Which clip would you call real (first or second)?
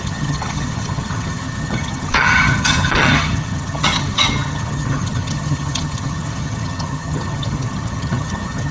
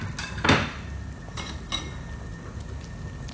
second